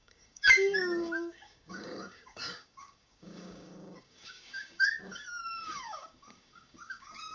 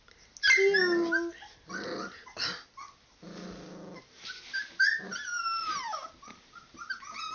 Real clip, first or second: second